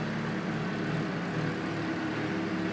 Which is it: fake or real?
real